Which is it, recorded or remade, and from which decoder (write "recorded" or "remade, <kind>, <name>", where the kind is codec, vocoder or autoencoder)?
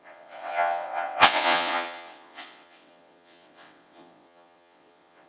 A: remade, vocoder, WaveNeXt